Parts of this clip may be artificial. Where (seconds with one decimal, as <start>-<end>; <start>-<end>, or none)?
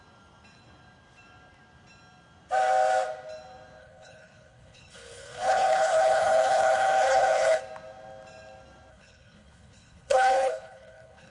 3.8-7.6; 8.9-11.3